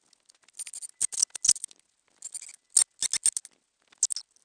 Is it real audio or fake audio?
real